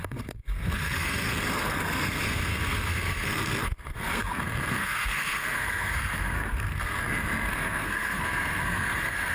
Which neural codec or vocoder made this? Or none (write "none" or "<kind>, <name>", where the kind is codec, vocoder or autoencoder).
codec, SNAC